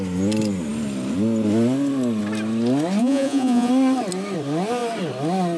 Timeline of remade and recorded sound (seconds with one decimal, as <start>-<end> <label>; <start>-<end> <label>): 0.0-3.0 recorded; 3.0-3.7 remade; 3.7-5.6 recorded